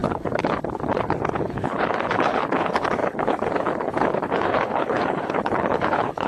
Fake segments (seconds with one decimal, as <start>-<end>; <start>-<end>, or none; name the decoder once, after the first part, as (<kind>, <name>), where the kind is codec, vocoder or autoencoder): 0.0-6.3 (codec, HILCodec)